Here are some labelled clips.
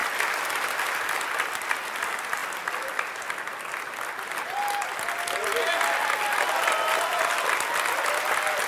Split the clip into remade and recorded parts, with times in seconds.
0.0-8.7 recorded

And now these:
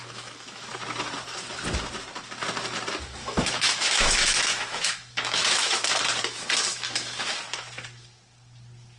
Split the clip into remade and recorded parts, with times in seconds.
0.0-0.7 remade; 0.7-3.2 recorded; 3.2-6.0 remade; 6.0-6.7 recorded; 6.7-7.3 remade; 7.3-9.0 recorded

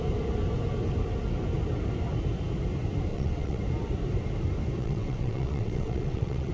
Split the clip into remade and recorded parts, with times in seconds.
0.0-3.1 recorded; 3.1-3.6 remade; 3.6-4.8 recorded; 4.8-6.5 remade

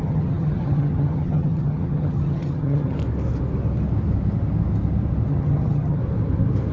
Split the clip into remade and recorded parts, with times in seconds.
0.0-3.0 remade; 3.0-5.3 recorded; 5.3-6.0 remade; 6.0-6.7 recorded

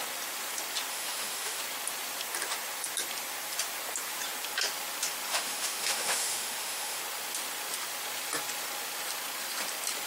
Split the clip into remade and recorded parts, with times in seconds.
0.0-0.9 recorded; 0.9-1.6 remade; 1.6-5.3 recorded; 5.3-7.0 remade; 7.0-10.1 recorded

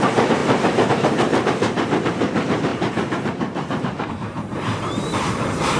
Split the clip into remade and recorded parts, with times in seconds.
0.0-5.8 remade

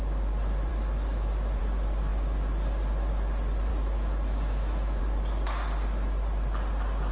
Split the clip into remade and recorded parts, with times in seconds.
0.0-0.7 recorded; 0.7-1.6 remade; 1.6-3.7 recorded; 3.7-5.0 remade; 5.0-7.1 recorded

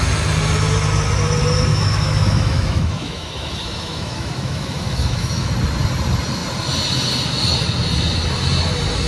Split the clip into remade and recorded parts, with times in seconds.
0.0-1.7 recorded; 1.7-5.5 remade; 5.5-9.1 recorded